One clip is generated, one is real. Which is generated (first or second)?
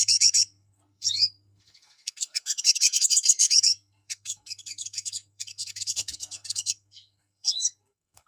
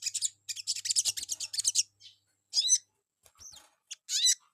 first